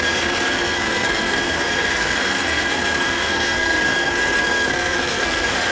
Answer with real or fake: fake